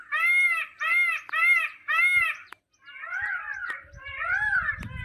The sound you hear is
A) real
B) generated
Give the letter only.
A